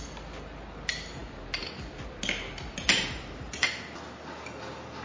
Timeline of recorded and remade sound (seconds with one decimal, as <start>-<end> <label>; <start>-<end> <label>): 0.0-5.0 recorded